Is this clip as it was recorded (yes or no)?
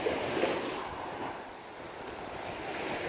yes